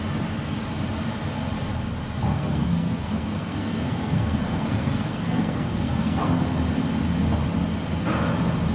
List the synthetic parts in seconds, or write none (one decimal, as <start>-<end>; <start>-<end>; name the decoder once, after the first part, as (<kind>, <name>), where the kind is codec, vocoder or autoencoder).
2.3-6.4 (codec, SNAC)